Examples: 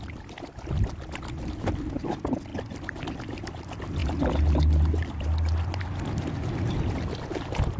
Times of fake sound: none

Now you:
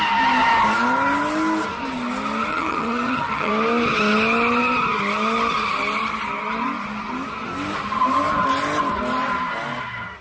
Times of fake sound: 2.5-3.5 (vocoder, HiFi-GAN)